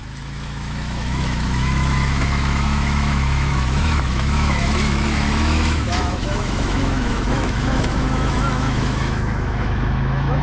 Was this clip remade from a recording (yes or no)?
yes